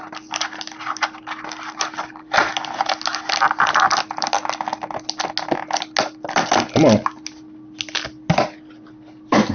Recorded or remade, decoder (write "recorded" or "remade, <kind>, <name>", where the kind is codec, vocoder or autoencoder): recorded